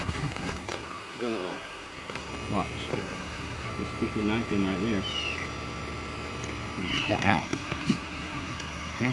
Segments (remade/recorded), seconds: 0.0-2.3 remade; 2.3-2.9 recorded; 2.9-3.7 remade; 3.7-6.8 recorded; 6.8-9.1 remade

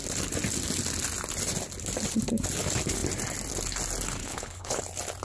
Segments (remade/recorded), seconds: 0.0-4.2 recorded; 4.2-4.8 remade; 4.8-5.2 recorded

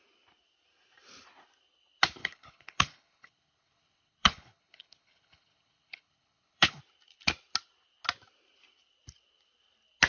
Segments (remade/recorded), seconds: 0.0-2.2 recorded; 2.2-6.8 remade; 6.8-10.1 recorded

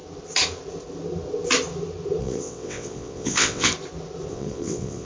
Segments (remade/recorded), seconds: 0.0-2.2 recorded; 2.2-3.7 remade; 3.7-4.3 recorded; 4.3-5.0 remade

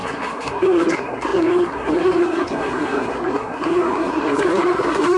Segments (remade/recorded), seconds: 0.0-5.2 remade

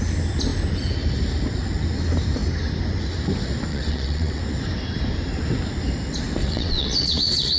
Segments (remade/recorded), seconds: 0.0-3.7 recorded; 3.7-4.4 remade; 4.4-6.4 recorded; 6.4-7.6 remade